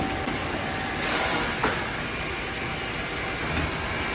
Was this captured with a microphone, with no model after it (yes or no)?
yes